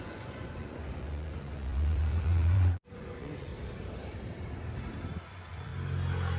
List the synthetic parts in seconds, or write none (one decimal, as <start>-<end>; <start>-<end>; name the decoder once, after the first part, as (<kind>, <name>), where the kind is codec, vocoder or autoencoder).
0.0-3.5 (vocoder, Vocos); 5.3-5.7